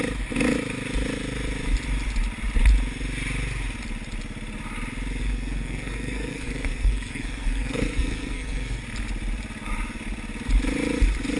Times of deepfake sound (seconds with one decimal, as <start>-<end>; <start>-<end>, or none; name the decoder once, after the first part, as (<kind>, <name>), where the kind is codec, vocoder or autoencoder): 5.2-8.8 (codec, SNAC)